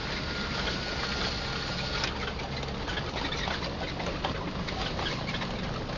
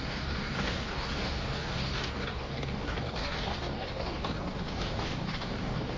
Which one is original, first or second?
first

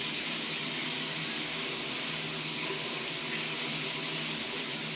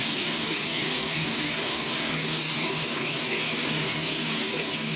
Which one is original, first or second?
first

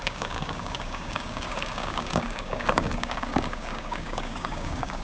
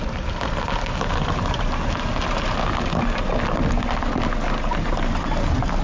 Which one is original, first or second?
second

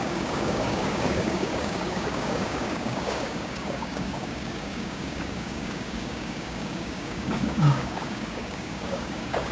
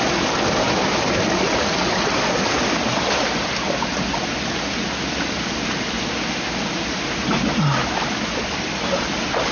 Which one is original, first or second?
second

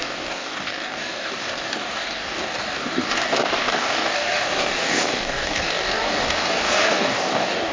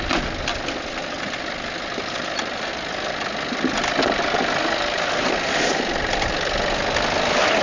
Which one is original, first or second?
second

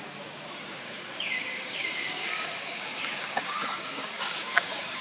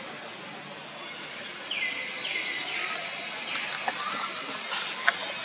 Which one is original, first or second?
second